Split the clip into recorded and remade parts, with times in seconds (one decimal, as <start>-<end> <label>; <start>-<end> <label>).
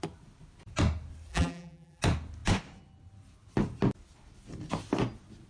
0.0-1.3 recorded; 1.3-2.0 remade; 2.0-5.5 recorded